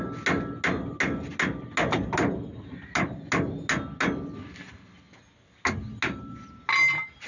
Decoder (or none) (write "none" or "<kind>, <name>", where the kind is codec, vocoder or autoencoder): none